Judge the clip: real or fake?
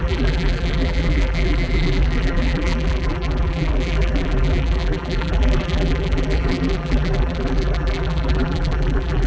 fake